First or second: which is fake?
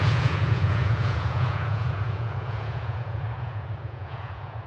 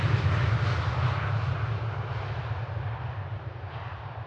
first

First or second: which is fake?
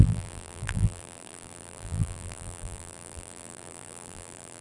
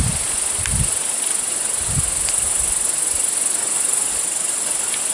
first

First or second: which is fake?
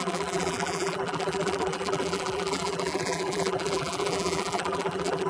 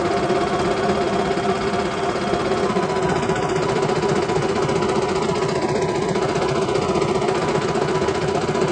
first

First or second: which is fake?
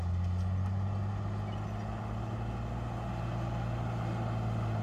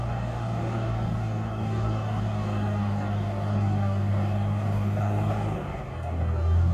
second